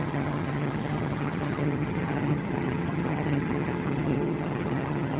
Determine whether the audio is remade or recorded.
remade